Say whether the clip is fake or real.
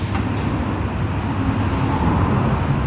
real